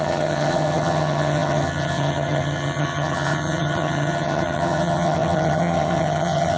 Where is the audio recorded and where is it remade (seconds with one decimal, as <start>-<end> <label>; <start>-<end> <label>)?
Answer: 0.0-6.6 remade